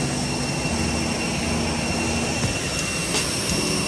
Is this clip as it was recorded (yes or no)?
yes